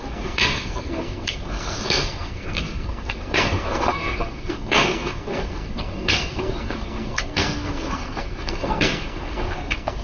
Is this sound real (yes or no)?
no